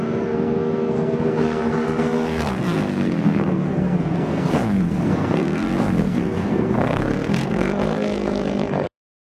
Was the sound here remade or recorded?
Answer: remade